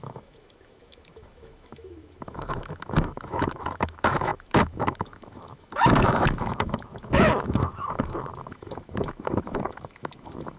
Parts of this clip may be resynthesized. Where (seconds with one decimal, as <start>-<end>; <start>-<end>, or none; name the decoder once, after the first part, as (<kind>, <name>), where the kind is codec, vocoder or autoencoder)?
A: 0.0-10.6 (autoencoder, DAC-VAE)